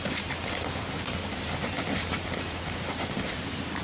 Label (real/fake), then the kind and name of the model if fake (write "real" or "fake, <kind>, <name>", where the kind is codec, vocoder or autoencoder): real